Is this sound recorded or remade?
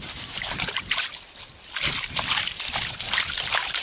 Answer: recorded